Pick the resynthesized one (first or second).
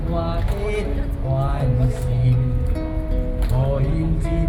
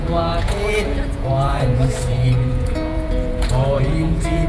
second